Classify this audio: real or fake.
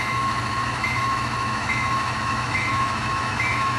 fake